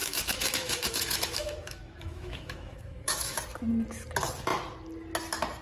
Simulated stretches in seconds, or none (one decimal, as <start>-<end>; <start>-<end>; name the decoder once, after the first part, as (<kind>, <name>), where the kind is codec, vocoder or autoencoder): 0.0-3.4 (autoencoder, DAC-VAE)